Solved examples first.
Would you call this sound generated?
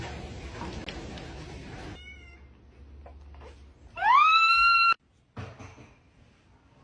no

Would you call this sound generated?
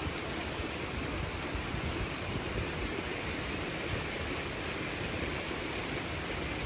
yes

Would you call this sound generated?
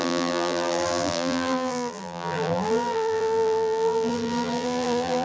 yes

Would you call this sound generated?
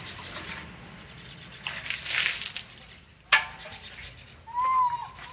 no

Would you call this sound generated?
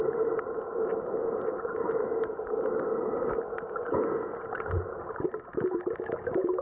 no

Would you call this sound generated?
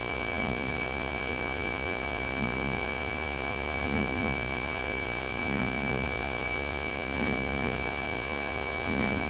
yes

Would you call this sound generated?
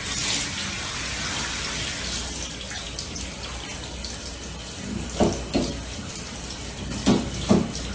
no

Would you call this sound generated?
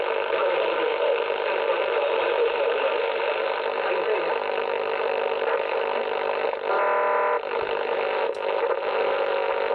no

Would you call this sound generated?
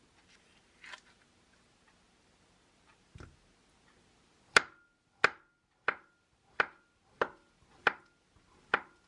no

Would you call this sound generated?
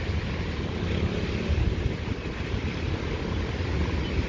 no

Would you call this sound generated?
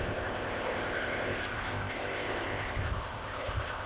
yes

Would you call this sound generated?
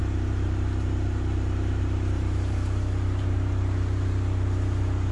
yes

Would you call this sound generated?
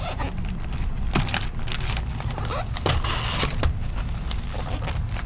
yes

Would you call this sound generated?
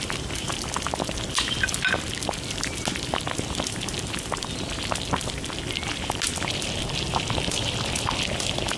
no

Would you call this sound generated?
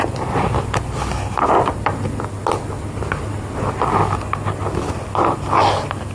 no